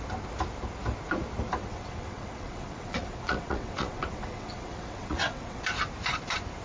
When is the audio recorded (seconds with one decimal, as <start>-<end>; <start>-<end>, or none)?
0.0-1.6; 5.6-6.6